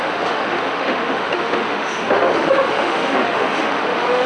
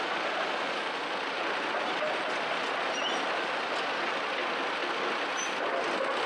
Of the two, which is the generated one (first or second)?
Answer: first